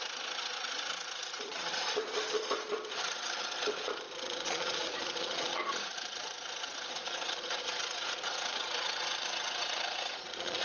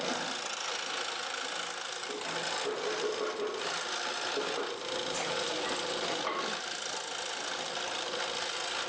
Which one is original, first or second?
second